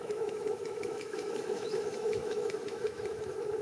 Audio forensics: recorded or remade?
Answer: remade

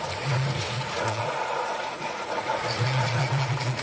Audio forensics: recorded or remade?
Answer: remade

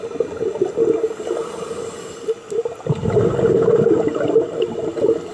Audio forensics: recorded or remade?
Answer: recorded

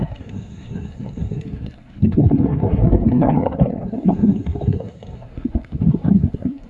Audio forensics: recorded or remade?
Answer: remade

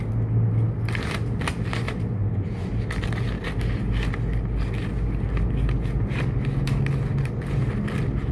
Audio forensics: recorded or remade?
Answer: recorded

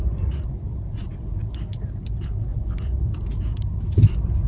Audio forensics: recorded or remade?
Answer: recorded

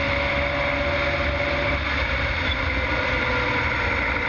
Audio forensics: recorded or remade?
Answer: recorded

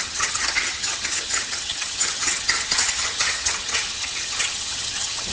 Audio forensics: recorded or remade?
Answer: remade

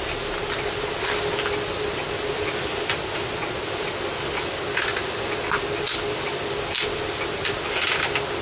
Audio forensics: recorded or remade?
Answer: recorded